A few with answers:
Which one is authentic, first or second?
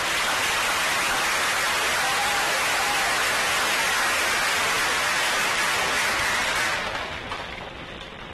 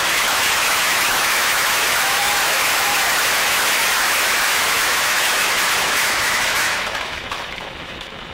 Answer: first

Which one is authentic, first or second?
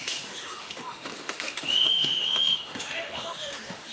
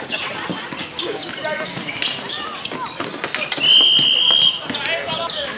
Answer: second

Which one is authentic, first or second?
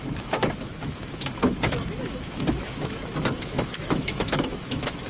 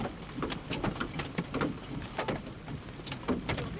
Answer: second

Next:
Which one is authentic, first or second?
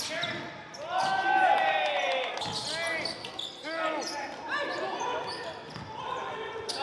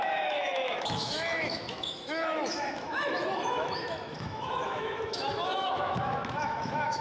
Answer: first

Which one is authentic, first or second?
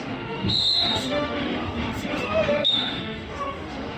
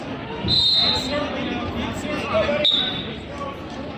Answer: second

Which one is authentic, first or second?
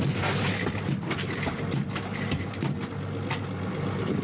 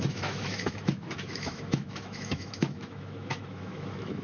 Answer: first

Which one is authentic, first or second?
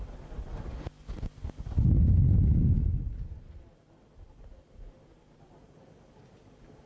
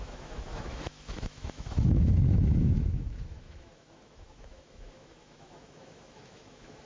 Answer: first